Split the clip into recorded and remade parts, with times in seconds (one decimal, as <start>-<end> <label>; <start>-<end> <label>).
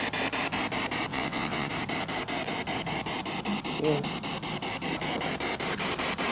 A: 0.0-1.1 recorded; 1.1-1.7 remade; 1.7-6.3 recorded